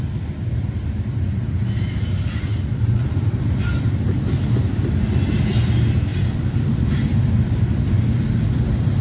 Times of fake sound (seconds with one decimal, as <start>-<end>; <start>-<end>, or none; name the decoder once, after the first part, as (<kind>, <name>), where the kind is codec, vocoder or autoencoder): 2.5-3.3 (vocoder, BigVGAN v2); 6.1-7.7